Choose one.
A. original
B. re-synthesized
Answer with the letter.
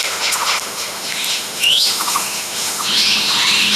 B